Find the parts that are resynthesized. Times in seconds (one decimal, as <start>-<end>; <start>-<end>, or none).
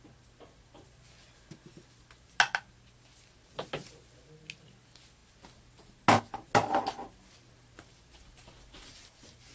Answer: none